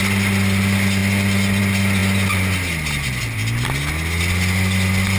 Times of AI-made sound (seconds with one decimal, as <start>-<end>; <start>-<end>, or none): none